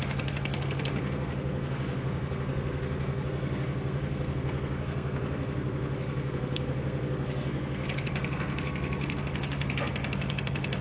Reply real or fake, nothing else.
fake